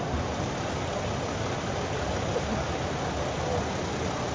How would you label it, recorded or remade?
recorded